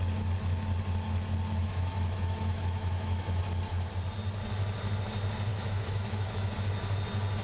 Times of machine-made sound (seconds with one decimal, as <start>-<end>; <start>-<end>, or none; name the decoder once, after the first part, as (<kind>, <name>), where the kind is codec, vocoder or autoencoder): 1.6-3.4 (autoencoder, DAC-VAE); 5.5-6.5